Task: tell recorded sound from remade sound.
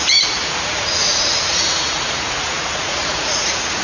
remade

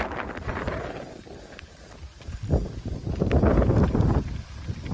remade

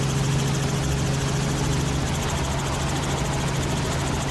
recorded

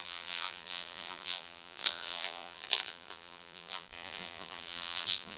remade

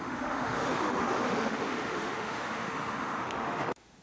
remade